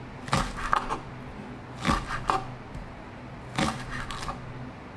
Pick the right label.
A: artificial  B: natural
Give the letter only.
B